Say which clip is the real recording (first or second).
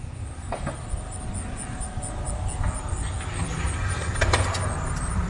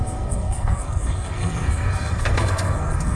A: first